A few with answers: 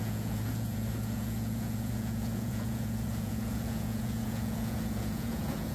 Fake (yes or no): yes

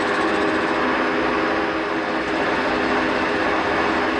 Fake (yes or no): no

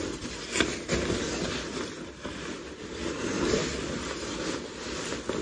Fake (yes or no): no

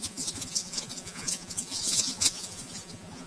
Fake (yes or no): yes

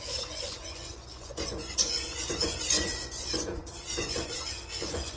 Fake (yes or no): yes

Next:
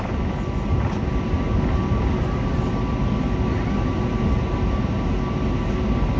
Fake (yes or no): no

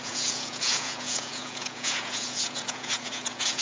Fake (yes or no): yes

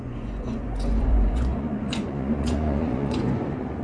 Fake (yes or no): yes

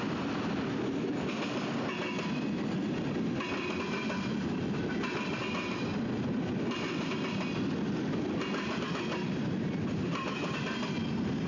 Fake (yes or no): no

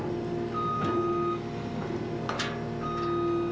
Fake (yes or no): no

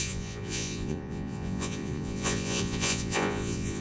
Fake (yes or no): yes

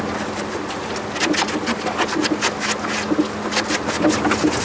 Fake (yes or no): no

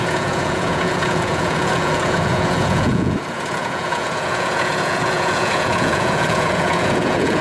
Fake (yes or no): yes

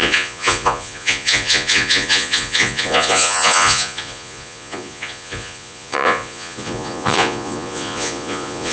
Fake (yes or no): yes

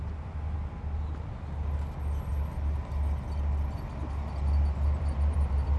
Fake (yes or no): no